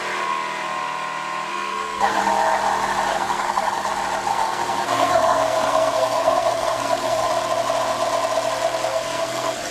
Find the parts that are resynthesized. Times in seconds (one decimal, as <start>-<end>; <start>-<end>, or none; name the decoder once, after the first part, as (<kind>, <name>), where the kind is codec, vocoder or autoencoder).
1.5-2.2 (codec, SNAC); 3.1-3.9; 4.3-7.3; 8.9-9.7